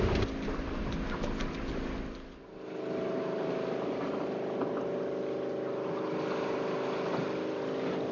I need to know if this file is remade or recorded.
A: recorded